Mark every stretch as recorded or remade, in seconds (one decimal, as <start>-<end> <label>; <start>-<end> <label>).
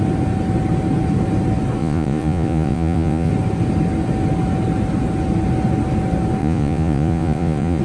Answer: 0.0-1.8 recorded; 1.8-3.3 remade; 3.3-6.4 recorded; 6.4-7.8 remade